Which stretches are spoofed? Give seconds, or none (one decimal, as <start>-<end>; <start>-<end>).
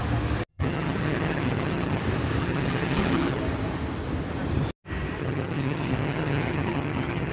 0.5-2.0; 2.4-3.4; 5.2-7.3